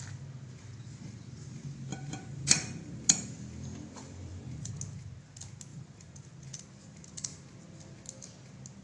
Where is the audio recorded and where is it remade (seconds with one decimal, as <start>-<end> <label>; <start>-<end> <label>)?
0.0-1.9 recorded; 1.9-4.7 remade; 4.7-5.7 recorded; 5.7-6.3 remade; 6.3-8.8 recorded